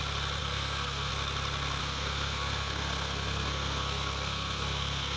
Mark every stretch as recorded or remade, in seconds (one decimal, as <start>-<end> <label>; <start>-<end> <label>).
0.0-0.4 recorded; 0.4-1.1 remade; 1.1-1.8 recorded; 1.8-5.2 remade